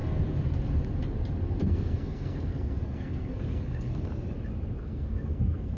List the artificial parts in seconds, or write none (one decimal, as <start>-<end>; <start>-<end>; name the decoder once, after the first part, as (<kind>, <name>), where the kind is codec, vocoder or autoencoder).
1.6-4.1 (codec, SNAC); 4.8-5.8